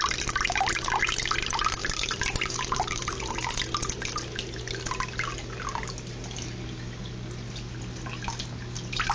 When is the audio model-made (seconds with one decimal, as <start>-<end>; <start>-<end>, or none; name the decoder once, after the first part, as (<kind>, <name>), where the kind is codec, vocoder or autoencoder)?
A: 1.8-3.2 (vocoder, BigVGAN v2)